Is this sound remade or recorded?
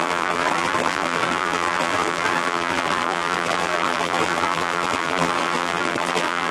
remade